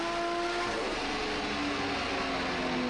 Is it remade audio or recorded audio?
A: recorded